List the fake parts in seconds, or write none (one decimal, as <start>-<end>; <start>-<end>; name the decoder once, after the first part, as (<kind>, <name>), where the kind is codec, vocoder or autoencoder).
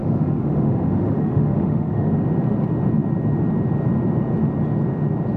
0.0-2.1 (autoencoder, DAC-VAE)